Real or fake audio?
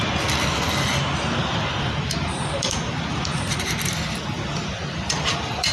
fake